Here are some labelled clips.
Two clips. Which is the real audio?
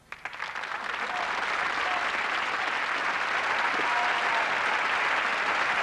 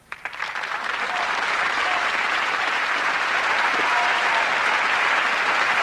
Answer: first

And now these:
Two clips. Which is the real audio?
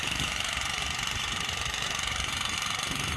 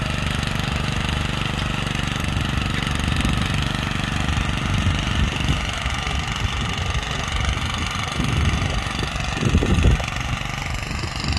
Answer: second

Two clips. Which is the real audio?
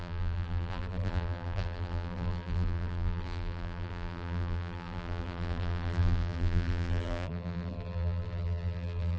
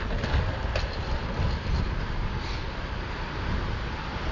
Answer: second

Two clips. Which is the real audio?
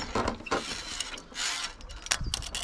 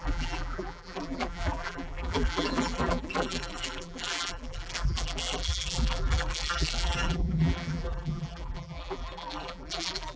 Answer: first